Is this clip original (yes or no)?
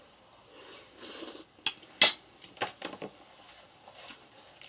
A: yes